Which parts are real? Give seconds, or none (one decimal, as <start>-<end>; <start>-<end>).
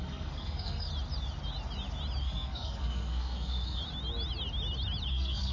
0.9-2.2; 3.8-5.1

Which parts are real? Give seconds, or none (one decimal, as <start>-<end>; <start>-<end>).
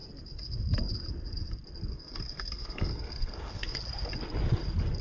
0.0-1.9; 3.8-5.0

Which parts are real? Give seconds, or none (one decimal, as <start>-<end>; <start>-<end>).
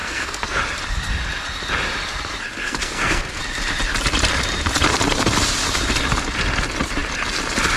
0.6-2.6; 3.4-7.8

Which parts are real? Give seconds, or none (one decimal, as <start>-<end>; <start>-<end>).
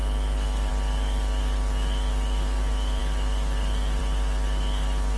0.0-5.2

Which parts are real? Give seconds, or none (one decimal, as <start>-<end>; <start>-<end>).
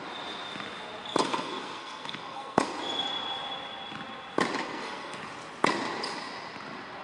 0.0-1.2; 2.8-4.6; 5.2-7.0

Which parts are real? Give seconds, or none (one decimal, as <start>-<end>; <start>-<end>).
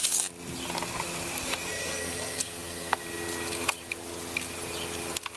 0.0-1.7; 3.0-5.4